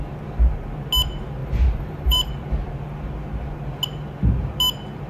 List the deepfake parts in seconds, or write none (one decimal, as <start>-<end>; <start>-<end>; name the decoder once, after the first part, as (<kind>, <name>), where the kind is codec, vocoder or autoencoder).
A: 1.4-2.3 (vocoder, BigVGAN v2)

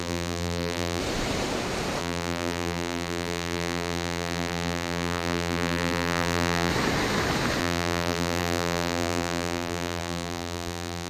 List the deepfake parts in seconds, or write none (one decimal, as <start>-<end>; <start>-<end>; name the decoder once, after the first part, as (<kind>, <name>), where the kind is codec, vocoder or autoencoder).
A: 0.0-1.0 (vocoder, BigVGAN v2); 2.0-6.7; 7.6-11.1

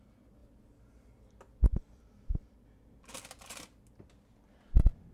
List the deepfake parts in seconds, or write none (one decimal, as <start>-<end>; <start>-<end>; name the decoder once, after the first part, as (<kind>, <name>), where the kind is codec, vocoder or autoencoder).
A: none

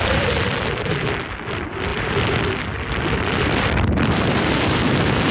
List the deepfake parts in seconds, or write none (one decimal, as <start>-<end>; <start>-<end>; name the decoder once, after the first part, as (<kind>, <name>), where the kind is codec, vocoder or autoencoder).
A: 1.9-5.3 (vocoder, BigVGAN v2)

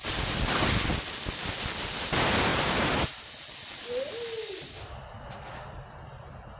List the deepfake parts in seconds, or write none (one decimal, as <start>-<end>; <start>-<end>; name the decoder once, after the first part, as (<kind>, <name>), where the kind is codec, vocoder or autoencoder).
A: 2.5-3.3 (vocoder, BigVGAN v2)

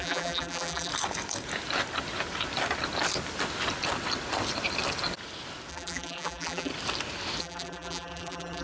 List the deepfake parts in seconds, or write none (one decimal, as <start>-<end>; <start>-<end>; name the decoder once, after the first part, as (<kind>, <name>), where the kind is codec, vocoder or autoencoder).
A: 0.0-0.9 (vocoder, BigVGAN v2); 5.7-6.7; 7.4-8.6

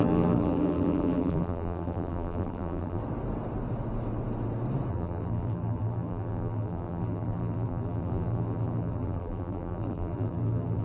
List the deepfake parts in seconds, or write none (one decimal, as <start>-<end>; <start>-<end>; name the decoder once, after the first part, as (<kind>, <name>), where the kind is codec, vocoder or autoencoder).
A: 0.0-3.0 (vocoder, BigVGAN v2); 4.9-10.8